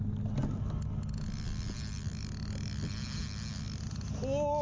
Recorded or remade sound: recorded